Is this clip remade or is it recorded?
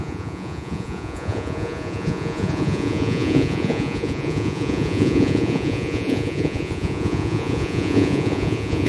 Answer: remade